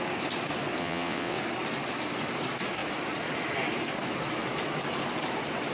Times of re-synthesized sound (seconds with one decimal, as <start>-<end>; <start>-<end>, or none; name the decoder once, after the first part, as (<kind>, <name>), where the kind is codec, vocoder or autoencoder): 0.8-1.4 (vocoder, WaveNeXt)